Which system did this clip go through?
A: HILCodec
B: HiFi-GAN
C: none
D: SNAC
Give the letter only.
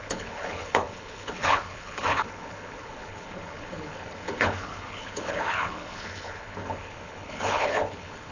A